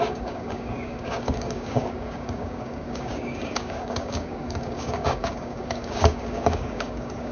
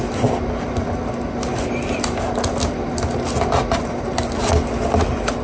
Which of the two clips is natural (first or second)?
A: second